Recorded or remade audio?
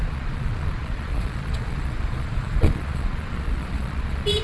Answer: remade